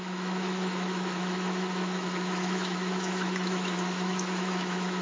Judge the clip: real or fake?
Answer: fake